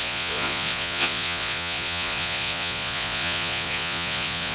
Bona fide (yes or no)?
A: no